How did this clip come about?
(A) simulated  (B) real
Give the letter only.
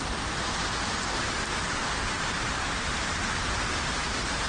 A